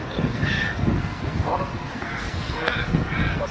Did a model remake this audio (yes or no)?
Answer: yes